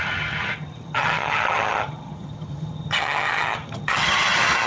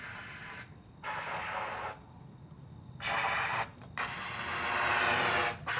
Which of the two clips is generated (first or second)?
first